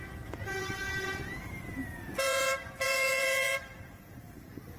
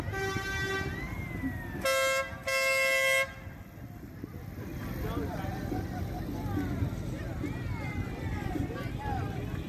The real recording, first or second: second